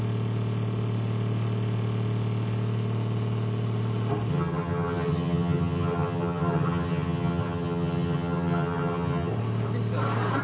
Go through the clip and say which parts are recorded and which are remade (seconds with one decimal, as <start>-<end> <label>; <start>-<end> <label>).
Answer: 0.0-4.3 recorded; 4.3-9.3 remade; 9.3-10.4 recorded